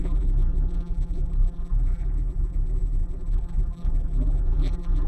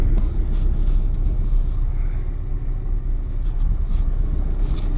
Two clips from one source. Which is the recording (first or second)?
second